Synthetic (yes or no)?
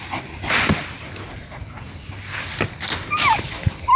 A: no